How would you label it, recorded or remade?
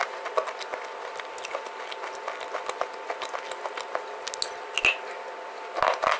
recorded